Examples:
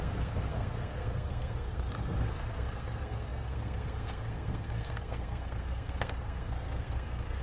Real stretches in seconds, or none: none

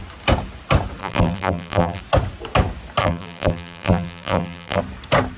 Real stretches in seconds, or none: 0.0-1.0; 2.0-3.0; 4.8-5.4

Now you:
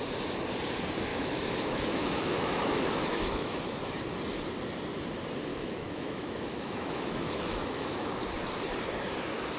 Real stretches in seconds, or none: 0.0-1.1; 3.6-5.5; 8.1-9.6

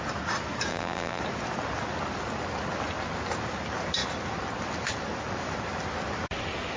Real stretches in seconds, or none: 0.0-0.7; 1.2-6.8